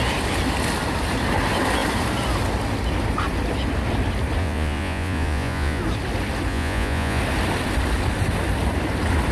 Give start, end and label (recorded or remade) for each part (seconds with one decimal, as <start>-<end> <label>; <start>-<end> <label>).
0.0-4.4 recorded; 4.4-5.8 remade; 5.8-6.5 recorded; 6.5-7.2 remade; 7.2-9.3 recorded